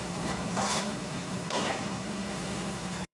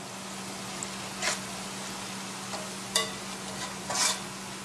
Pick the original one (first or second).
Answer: second